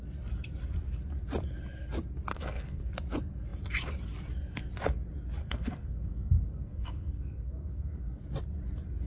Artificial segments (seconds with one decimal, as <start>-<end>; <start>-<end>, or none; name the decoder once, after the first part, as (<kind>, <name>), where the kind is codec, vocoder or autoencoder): 2.3-2.9 (codec, SNAC); 5.4-8.2